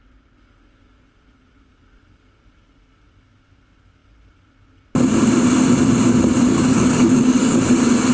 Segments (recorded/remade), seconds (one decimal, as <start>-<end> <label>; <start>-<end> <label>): 0.0-6.5 recorded; 6.5-7.6 remade; 7.6-8.1 recorded